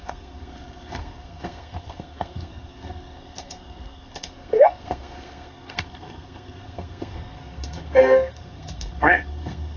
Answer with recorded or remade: remade